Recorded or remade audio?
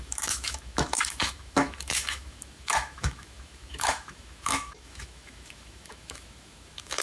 remade